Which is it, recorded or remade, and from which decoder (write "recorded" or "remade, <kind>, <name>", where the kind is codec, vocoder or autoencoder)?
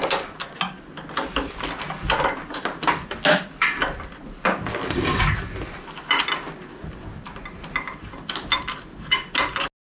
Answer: recorded